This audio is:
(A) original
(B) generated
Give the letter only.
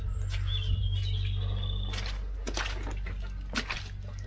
A